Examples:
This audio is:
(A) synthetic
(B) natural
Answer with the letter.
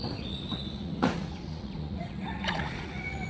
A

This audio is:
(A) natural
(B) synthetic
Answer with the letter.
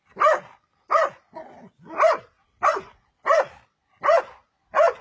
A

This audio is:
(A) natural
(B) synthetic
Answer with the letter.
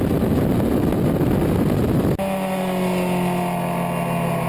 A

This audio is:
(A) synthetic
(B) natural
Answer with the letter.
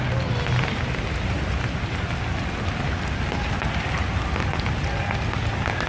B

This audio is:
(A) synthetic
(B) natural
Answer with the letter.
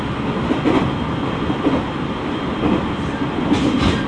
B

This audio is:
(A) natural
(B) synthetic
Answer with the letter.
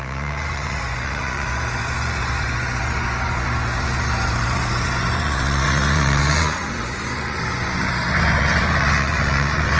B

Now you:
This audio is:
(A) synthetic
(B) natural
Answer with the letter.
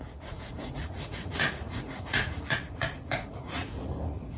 A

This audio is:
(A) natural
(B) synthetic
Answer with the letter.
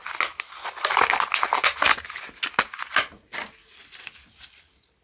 A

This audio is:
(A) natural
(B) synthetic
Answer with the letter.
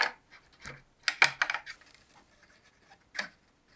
A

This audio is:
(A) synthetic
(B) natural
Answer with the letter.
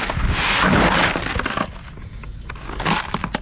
B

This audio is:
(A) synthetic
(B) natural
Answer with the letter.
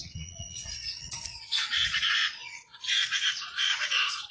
A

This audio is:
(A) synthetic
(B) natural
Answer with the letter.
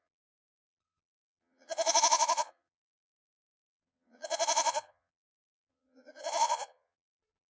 A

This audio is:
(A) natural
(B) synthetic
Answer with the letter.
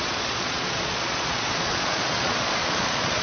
B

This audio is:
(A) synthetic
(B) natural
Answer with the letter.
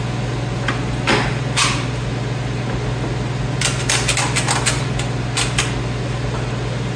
B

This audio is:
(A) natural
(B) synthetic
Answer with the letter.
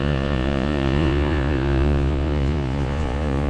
B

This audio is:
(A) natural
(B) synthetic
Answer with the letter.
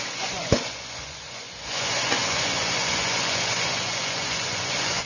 B